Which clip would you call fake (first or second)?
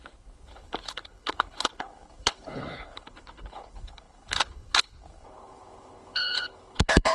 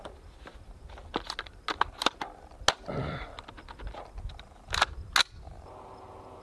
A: first